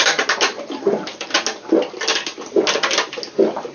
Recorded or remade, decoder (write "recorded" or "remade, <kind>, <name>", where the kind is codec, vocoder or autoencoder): recorded